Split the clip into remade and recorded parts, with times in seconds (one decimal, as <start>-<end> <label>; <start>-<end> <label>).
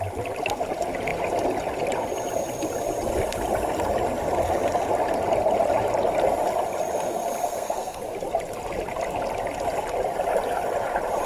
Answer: 0.0-7.4 recorded; 7.4-8.0 remade; 8.0-11.2 recorded